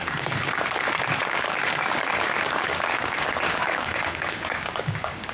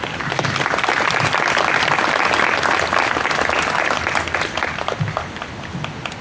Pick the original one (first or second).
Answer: second